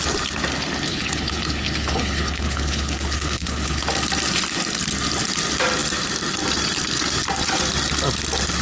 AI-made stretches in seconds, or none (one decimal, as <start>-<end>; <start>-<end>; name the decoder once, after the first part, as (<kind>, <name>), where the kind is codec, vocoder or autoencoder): 0.9-3.8 (codec, HILCodec)